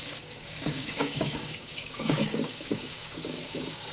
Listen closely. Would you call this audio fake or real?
fake